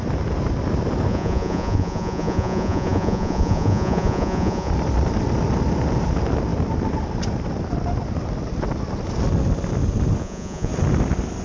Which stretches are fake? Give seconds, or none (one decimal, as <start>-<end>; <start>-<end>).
1.1-4.7; 10.2-10.7